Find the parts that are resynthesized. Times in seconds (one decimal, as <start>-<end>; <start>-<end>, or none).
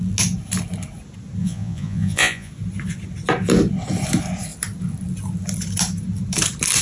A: 1.4-2.5